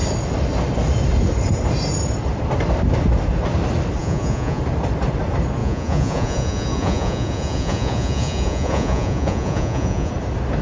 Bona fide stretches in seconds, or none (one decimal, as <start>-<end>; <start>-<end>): 0.0-4.0; 4.6-5.6; 10.1-10.6